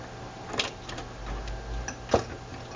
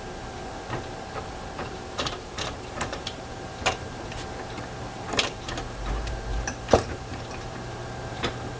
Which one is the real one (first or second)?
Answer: first